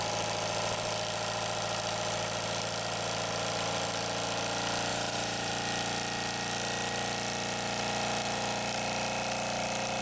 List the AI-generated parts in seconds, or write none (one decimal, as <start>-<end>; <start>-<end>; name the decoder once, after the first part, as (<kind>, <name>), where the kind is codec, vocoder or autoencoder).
4.9-5.5 (vocoder, BigVGAN v2)